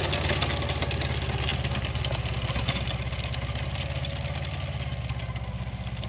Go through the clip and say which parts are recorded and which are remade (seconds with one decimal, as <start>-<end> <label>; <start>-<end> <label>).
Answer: 0.0-6.1 recorded